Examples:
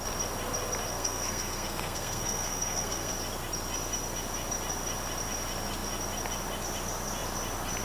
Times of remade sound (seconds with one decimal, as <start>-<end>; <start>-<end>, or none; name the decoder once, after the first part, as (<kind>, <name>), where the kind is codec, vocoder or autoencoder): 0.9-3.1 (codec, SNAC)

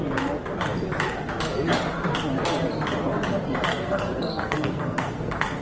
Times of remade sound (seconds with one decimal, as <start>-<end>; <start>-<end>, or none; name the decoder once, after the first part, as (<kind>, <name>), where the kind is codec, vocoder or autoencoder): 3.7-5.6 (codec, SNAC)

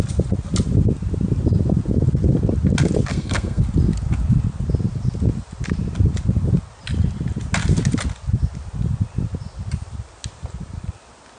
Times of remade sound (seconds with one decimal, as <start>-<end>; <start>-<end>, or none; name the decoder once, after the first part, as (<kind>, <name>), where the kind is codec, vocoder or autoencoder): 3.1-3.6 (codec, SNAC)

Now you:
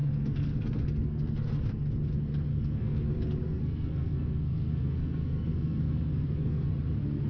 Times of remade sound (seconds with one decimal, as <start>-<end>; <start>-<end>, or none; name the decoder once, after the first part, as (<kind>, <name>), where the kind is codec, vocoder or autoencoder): 0.0-1.6 (codec, SNAC); 2.5-3.1; 3.5-6.7

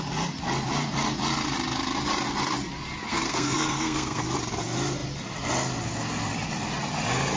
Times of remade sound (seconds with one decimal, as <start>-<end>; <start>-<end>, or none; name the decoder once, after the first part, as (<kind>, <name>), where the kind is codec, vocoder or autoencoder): 3.1-4.2 (codec, SNAC)